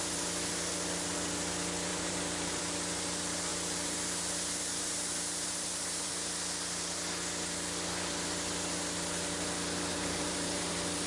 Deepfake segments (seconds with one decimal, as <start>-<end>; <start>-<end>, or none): 1.9-2.6; 3.5-6.1; 9.9-10.7